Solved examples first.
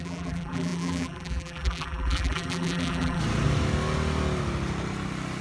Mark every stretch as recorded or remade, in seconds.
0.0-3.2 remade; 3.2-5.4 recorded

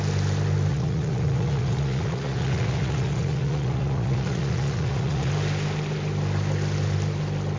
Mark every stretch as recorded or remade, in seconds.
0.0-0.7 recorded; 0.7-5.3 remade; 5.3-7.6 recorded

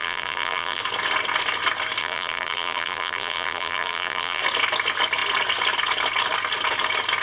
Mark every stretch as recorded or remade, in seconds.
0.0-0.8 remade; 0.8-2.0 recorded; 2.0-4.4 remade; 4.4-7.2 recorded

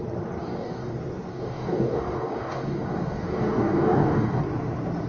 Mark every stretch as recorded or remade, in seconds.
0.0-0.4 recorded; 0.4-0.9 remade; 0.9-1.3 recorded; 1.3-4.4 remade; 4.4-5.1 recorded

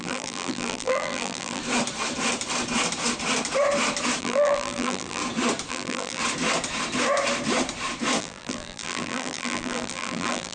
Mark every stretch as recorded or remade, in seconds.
0.0-1.6 remade; 1.6-4.2 recorded; 4.2-5.2 remade; 5.2-5.7 recorded; 5.7-6.2 remade; 6.2-8.2 recorded; 8.2-10.5 remade

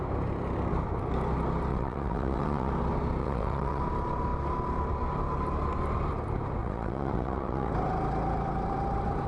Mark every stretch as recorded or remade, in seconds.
0.0-1.7 recorded; 1.7-2.7 remade; 2.7-3.2 recorded; 3.2-3.8 remade; 3.8-6.6 recorded; 6.6-7.7 remade; 7.7-9.3 recorded

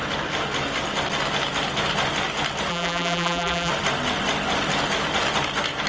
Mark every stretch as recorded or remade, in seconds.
0.0-2.7 recorded; 2.7-3.7 remade; 3.7-5.9 recorded

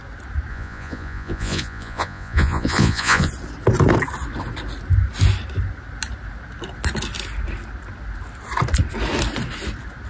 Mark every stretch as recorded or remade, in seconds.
0.0-0.5 recorded; 0.5-3.3 remade; 3.3-10.1 recorded